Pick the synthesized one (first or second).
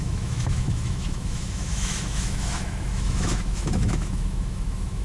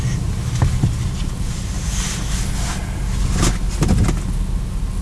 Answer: first